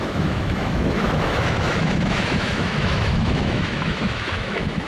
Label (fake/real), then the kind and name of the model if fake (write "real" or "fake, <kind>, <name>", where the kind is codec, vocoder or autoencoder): fake, autoencoder, DAC-VAE